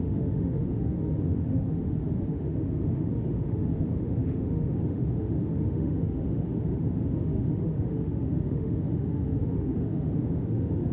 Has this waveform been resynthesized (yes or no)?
yes